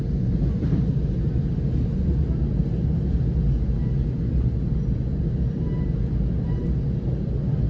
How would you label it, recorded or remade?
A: recorded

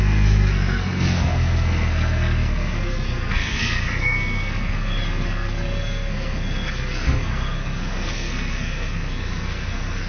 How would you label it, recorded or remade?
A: remade